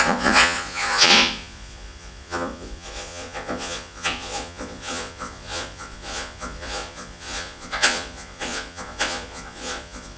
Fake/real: fake